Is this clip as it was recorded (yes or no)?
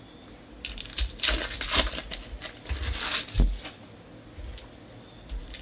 yes